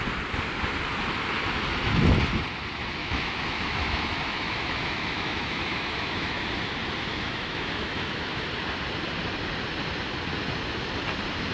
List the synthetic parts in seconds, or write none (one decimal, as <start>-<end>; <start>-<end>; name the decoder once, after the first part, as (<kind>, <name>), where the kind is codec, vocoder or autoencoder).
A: 3.0-6.4 (autoencoder, DAC-VAE); 7.1-8.5